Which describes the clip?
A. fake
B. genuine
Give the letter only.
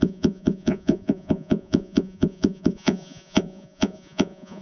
A